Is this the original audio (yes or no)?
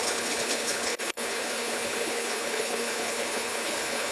no